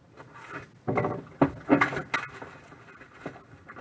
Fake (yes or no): no